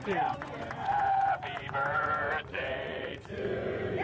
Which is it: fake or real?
fake